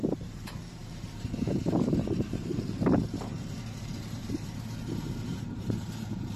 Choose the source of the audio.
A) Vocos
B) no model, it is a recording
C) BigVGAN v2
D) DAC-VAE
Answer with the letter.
C